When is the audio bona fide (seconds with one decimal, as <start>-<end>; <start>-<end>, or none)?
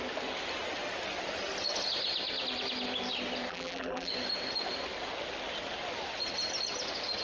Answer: 0.0-3.5; 4.1-7.2